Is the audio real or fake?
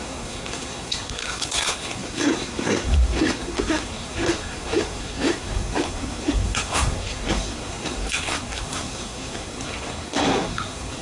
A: fake